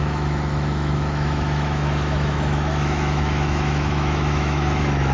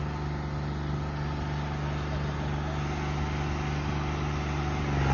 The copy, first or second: first